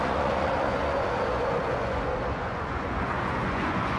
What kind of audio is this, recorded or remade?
remade